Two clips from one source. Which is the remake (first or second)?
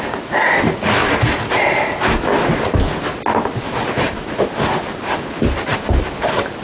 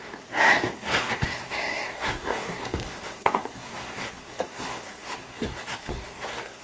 second